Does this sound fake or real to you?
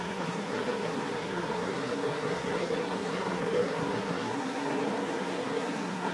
fake